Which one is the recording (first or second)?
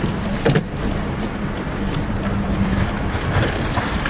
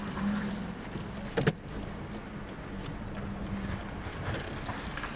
second